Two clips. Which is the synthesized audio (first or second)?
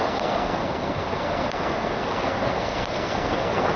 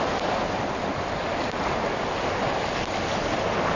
first